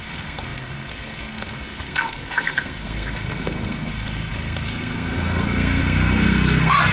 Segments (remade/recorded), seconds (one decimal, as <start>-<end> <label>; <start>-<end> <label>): 0.0-6.9 remade

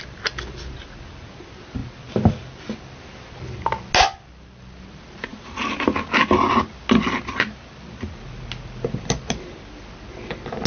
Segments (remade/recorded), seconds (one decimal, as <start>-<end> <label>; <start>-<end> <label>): 0.0-10.7 recorded

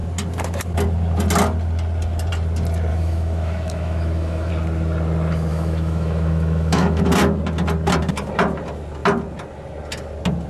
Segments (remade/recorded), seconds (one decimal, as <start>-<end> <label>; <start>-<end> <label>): 0.0-2.9 recorded; 2.9-4.5 remade; 4.5-5.5 recorded; 5.5-7.0 remade; 7.0-10.5 recorded

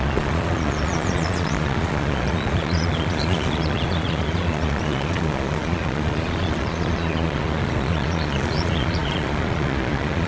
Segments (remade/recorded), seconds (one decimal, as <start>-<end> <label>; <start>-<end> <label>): 0.0-10.3 remade

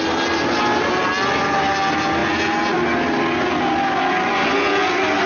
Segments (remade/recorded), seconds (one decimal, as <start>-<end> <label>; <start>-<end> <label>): 0.0-5.3 recorded

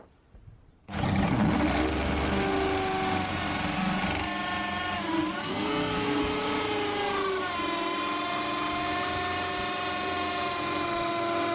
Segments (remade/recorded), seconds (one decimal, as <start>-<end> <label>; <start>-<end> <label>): 0.0-5.4 recorded; 5.4-6.2 remade; 6.2-11.5 recorded

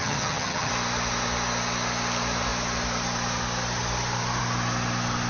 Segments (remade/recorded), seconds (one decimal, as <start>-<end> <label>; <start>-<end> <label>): 0.0-0.7 remade; 0.7-5.3 recorded